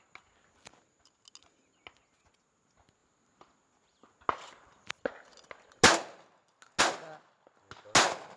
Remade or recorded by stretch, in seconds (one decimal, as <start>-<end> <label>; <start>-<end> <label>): 0.0-8.4 recorded